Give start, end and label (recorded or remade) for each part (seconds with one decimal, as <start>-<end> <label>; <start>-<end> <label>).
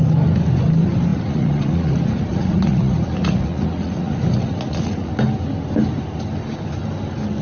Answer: 0.0-1.1 recorded; 1.1-5.1 remade; 5.1-7.4 recorded